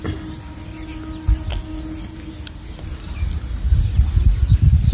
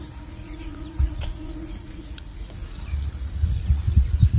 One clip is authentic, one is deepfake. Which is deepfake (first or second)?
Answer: second